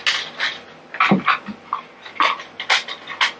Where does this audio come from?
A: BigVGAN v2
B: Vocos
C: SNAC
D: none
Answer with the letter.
D